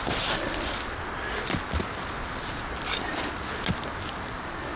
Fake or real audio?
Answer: real